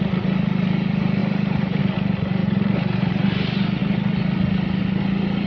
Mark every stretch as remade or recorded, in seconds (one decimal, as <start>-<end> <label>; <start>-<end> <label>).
0.0-1.2 recorded; 1.2-1.8 remade; 1.8-2.4 recorded; 2.4-3.1 remade; 3.1-5.5 recorded